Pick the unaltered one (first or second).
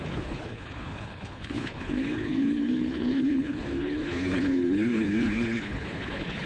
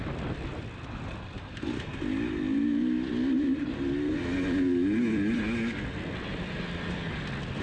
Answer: second